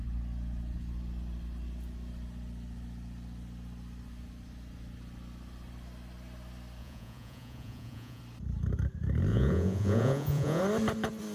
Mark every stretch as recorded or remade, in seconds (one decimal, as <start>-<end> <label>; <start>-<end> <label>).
0.0-6.8 recorded; 6.8-8.2 remade; 8.2-9.3 recorded; 9.3-10.6 remade; 10.6-11.3 recorded